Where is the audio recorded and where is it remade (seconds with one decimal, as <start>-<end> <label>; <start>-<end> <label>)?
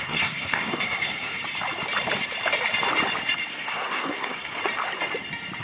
0.0-1.4 remade; 1.4-3.5 recorded; 3.5-4.6 remade; 4.6-5.6 recorded